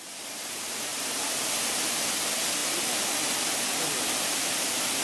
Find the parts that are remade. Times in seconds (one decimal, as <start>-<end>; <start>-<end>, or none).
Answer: none